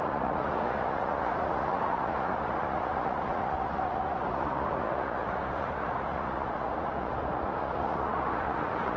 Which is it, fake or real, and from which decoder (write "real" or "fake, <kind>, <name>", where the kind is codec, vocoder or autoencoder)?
fake, vocoder, Vocos